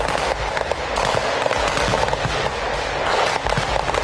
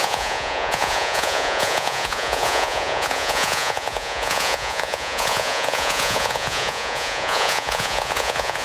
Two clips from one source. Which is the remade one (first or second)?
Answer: second